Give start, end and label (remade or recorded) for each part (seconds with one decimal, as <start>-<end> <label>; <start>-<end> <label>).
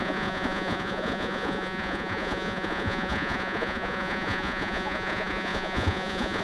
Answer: 0.0-6.4 remade